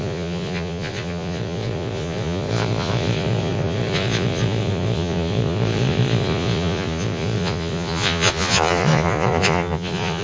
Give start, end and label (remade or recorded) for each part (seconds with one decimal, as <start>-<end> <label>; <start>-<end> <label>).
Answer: 0.0-10.2 remade